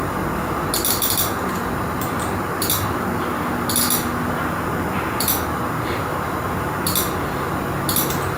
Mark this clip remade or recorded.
recorded